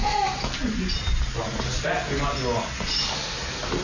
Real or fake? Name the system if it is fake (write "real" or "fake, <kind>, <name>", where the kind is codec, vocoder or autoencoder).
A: real